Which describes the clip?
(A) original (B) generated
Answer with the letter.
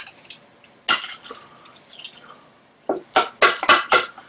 A